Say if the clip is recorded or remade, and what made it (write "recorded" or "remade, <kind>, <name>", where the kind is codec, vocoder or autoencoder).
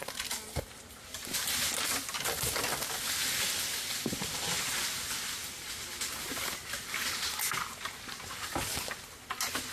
recorded